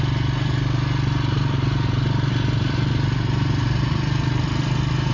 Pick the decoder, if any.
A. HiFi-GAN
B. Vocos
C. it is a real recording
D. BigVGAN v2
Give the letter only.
C